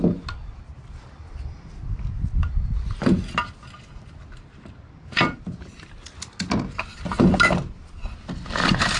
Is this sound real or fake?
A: real